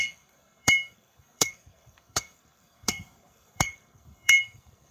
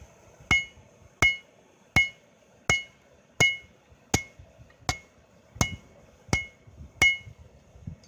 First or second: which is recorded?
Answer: second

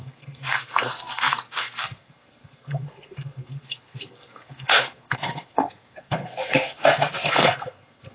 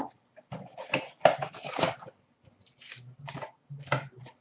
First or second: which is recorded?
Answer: second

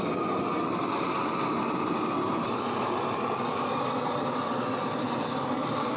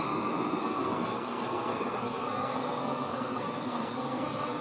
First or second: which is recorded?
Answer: first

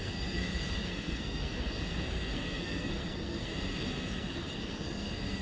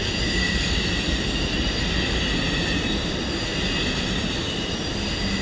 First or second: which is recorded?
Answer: second